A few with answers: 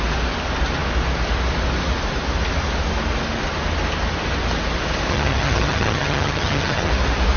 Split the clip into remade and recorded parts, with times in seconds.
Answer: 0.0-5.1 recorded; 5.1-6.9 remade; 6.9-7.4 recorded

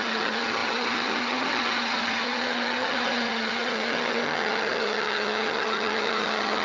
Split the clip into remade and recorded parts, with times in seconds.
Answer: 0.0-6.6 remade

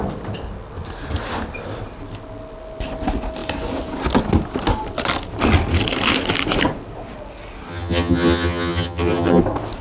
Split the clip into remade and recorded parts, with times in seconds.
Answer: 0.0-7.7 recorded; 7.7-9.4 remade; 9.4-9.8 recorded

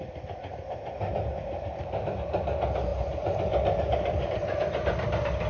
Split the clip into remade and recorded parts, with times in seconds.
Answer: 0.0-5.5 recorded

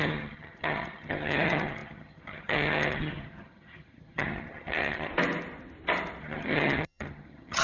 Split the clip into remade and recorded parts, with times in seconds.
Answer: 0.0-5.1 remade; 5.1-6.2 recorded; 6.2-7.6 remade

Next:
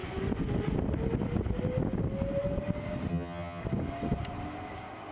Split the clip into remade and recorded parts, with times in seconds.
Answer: 0.0-3.1 recorded; 3.1-3.6 remade; 3.6-5.1 recorded